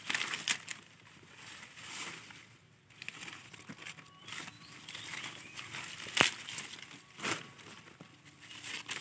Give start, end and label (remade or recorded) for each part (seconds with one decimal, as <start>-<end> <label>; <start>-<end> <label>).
0.0-9.0 recorded